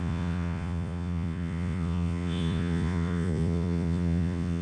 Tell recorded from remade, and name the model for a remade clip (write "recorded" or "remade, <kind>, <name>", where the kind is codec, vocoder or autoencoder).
remade, vocoder, Vocos